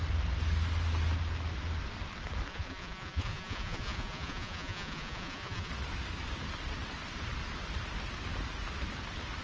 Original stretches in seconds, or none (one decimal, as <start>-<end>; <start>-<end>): 0.0-2.5; 5.7-9.4